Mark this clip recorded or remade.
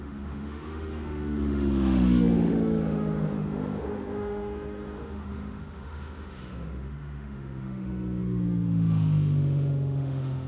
remade